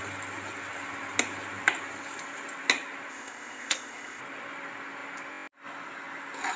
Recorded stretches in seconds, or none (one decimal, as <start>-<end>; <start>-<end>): 0.0-3.1; 4.2-6.6